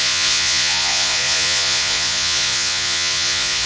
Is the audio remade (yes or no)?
yes